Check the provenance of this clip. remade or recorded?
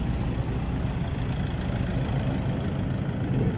recorded